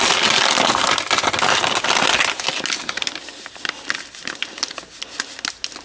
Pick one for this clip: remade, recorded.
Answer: recorded